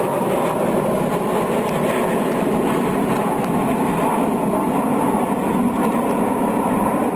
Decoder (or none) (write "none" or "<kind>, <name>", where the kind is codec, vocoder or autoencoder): none